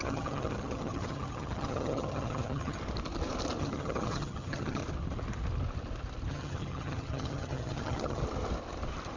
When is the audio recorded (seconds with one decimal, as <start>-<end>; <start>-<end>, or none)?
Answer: 2.8-3.6; 4.8-6.3; 8.2-9.2